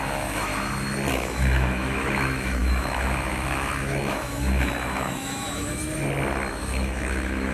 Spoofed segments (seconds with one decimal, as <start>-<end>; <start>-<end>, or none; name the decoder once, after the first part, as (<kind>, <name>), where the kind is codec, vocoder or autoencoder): 0.0-0.5 (autoencoder, DAC-VAE); 1.1-5.8; 6.5-7.5